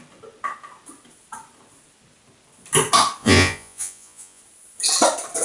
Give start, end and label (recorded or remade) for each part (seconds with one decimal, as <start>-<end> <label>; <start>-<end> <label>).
0.0-3.2 recorded; 3.2-4.4 remade; 4.4-5.4 recorded